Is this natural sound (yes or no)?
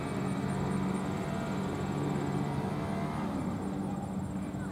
yes